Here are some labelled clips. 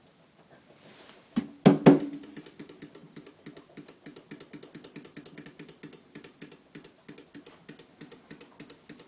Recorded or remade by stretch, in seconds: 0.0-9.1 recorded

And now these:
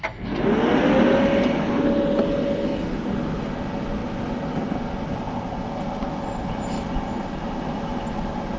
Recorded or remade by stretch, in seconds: 0.0-8.6 recorded

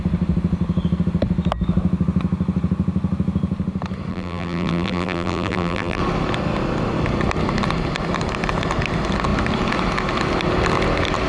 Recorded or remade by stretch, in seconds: 0.0-4.1 recorded; 4.1-6.0 remade; 6.0-11.3 recorded